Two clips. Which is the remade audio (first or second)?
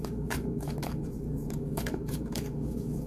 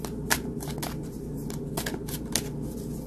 first